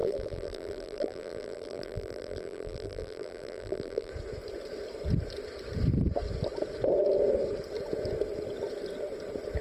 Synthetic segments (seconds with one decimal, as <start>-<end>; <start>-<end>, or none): 0.0-4.1